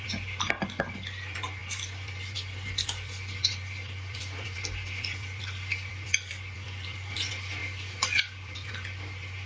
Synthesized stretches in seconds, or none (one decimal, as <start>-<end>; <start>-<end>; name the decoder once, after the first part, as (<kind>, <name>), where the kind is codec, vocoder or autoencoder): none